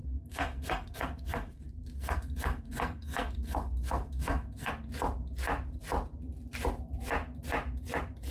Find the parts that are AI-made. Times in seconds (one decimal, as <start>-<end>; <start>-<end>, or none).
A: 0.0-4.7